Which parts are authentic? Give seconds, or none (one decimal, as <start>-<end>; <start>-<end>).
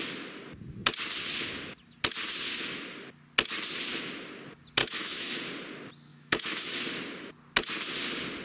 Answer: 0.0-4.8; 5.5-6.1; 6.8-8.4